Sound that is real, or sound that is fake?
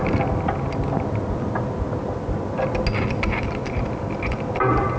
real